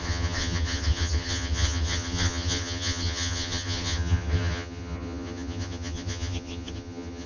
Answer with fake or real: fake